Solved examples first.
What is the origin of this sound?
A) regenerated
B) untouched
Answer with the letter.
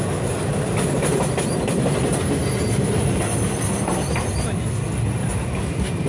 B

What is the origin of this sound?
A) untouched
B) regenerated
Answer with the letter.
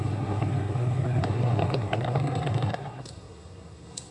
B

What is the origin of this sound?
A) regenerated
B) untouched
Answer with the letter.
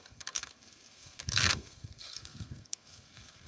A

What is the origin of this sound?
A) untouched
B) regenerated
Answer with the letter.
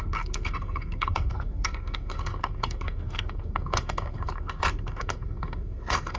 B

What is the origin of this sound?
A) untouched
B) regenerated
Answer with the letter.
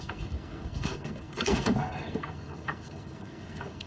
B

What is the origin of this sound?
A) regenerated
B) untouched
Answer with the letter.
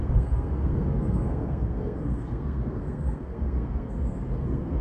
A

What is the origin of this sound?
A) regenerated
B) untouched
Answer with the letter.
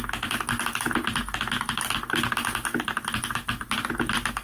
B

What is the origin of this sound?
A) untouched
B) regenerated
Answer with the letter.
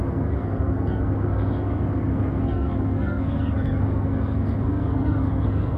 B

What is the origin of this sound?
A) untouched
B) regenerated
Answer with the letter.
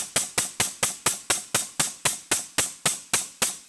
A